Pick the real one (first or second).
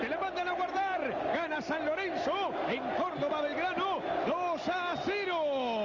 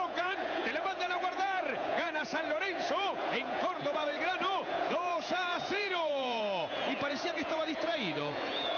first